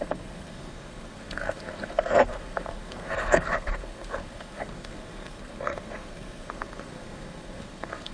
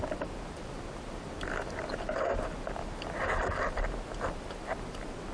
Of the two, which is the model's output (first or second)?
first